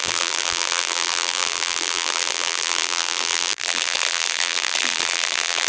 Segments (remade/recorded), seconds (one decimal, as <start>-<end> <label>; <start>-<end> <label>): 0.0-5.7 remade